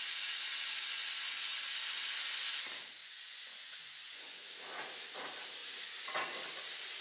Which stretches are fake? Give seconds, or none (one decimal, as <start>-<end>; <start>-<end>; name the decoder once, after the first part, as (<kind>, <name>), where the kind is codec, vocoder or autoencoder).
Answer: 3.0-4.5 (vocoder, Vocos); 5.6-6.1